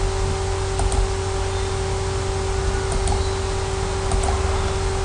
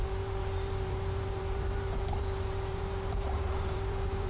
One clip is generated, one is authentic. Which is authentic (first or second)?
first